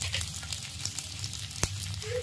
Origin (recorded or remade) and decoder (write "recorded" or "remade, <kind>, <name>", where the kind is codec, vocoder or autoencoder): remade, vocoder, BigVGAN v2